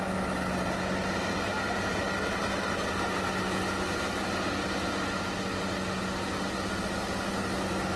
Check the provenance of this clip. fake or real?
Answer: real